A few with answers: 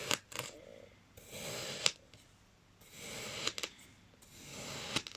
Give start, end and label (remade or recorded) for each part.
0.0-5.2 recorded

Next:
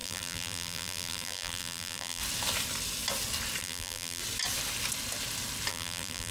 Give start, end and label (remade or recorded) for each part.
0.0-2.2 remade; 2.2-3.6 recorded; 3.6-4.2 remade; 4.2-5.7 recorded; 5.7-6.3 remade

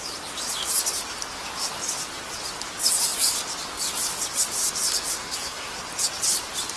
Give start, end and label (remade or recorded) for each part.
0.0-5.1 recorded; 5.1-5.8 remade; 5.8-6.8 recorded